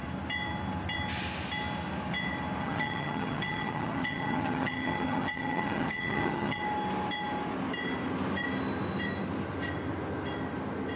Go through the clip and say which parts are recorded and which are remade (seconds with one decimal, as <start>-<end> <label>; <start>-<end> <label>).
0.0-2.6 recorded; 2.6-6.6 remade; 6.6-11.0 recorded